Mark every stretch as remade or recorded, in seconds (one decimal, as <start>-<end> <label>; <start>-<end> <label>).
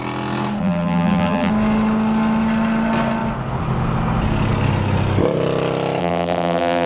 0.0-0.6 recorded; 0.6-1.5 remade; 1.5-6.0 recorded; 6.0-6.9 remade